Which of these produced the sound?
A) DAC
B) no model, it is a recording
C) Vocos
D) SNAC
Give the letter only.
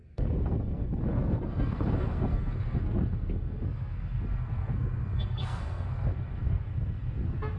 D